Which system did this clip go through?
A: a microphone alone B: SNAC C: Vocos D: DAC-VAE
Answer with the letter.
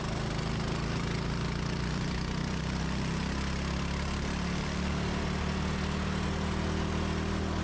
A